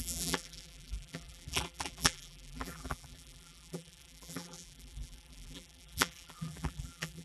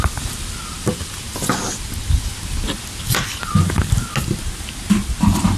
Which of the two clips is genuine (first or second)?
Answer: second